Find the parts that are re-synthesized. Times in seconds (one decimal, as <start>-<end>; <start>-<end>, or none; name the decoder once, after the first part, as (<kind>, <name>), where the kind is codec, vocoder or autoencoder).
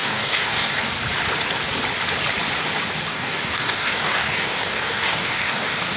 0.0-0.9 (codec, DAC); 3.1-6.0